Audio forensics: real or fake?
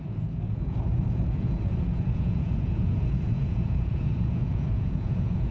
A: fake